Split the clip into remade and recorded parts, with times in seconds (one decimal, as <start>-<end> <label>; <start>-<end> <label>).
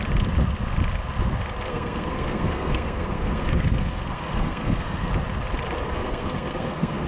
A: 0.0-1.7 recorded; 1.7-5.1 remade; 5.1-5.8 recorded; 5.8-7.1 remade